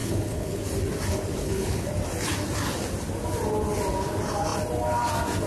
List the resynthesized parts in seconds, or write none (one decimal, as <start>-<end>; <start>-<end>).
0.0-0.6; 1.4-1.9